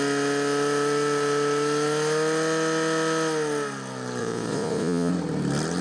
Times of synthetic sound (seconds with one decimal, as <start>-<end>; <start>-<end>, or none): 4.2-5.1